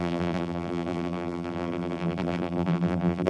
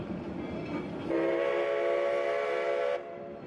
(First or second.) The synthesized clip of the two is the first